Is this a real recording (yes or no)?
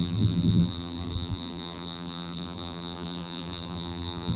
no